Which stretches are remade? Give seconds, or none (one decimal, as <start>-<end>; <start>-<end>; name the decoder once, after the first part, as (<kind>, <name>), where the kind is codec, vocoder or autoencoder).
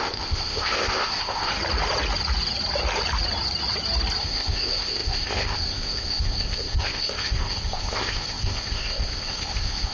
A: 0.0-1.5 (codec, ZipCodec); 4.2-9.9